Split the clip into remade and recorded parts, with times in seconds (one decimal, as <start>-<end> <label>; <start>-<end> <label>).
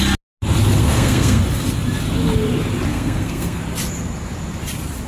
0.0-0.8 recorded; 0.8-1.4 remade; 1.4-2.9 recorded; 2.9-3.6 remade; 3.6-5.1 recorded